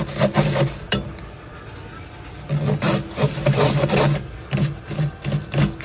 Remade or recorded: recorded